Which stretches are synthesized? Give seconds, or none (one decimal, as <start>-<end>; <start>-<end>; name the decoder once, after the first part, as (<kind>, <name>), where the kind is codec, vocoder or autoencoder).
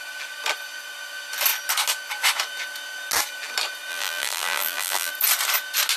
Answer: 3.9-5.1 (vocoder, BigVGAN v2)